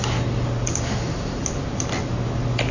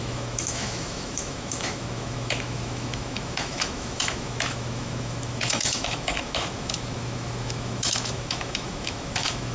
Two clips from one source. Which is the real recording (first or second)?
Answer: first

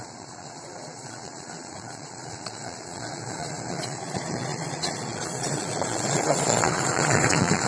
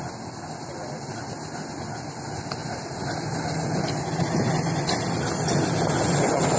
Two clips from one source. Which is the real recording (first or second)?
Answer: second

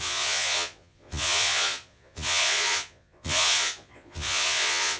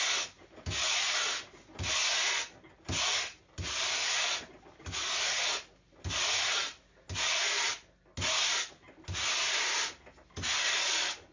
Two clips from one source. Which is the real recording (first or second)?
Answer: second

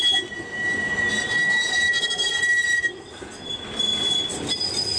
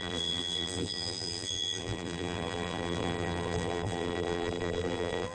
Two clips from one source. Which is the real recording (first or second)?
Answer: first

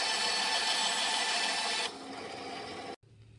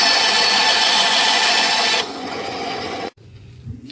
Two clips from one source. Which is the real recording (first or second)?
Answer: first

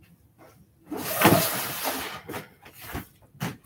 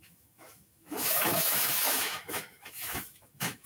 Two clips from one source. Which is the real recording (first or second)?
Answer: first